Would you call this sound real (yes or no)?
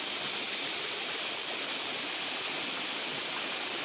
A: yes